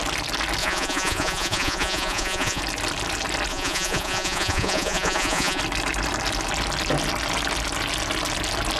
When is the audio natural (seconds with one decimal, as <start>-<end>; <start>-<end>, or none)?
0.0-0.6; 2.6-3.5; 5.6-8.8